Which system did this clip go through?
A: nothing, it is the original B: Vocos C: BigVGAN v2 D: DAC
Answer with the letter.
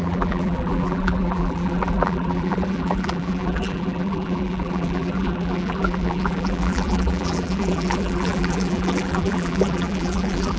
C